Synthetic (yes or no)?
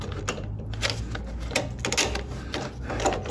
no